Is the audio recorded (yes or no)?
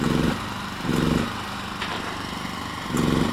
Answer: no